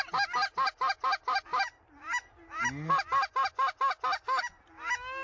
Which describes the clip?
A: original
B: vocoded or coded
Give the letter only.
A